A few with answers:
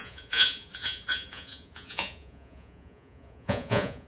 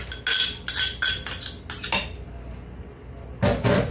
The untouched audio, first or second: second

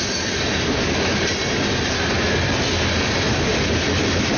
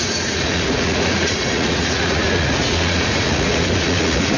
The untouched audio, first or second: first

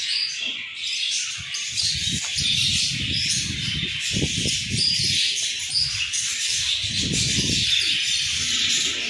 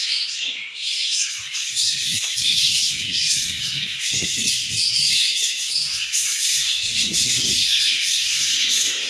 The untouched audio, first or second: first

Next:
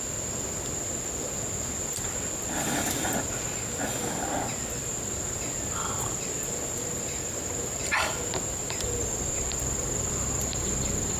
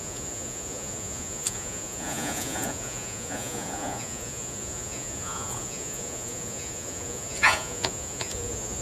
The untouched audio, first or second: first